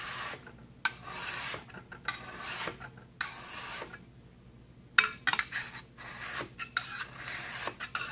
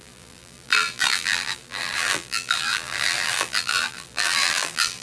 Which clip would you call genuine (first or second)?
first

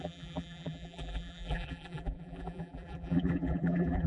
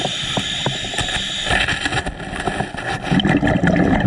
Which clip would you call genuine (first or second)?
second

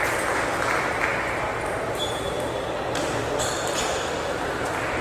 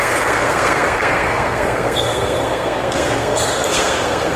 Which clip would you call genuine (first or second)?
first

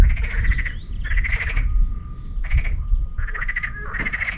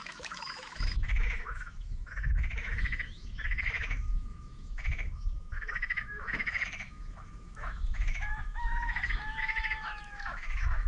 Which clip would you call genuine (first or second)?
first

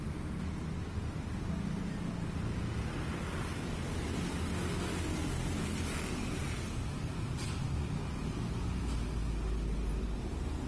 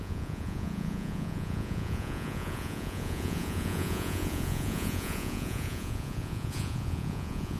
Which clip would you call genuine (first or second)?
first